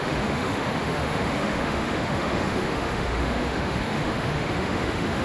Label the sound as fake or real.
fake